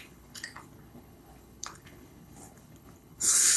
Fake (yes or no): yes